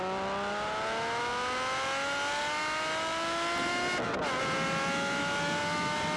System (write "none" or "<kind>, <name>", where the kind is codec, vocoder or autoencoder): none